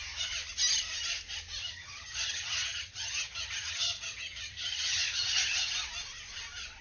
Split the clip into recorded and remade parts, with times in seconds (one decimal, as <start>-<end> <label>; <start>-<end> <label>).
0.0-1.6 recorded; 1.6-5.7 remade; 5.7-6.8 recorded